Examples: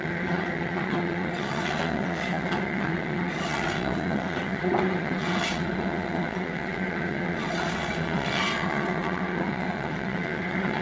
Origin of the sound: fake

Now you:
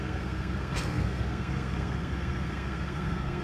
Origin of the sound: fake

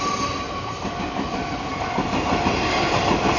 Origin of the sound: fake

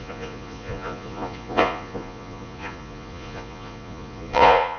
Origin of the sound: fake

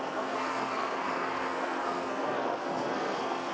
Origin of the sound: fake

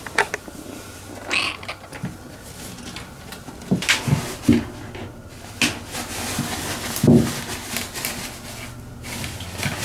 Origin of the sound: real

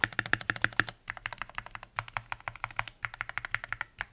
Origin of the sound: real